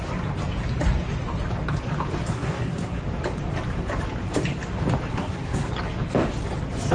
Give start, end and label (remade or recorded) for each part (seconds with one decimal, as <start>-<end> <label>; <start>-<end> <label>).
0.0-2.3 recorded; 2.3-3.0 remade; 3.0-5.1 recorded; 5.1-5.7 remade; 5.7-6.9 recorded